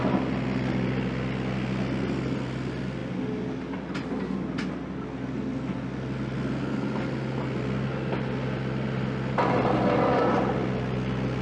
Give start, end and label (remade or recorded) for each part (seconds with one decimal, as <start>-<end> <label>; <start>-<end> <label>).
0.0-11.4 recorded